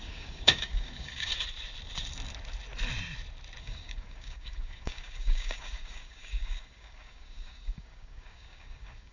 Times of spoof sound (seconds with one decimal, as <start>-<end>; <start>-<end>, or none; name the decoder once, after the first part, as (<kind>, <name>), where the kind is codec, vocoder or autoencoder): 0.0-1.3 (codec, DAC); 3.6-9.1